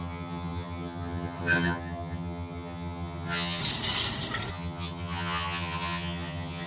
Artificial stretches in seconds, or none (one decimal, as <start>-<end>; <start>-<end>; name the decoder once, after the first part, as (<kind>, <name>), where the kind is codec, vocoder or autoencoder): 0.0-3.6 (vocoder, HiFi-GAN); 4.5-6.7